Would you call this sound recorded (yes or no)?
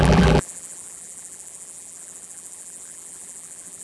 no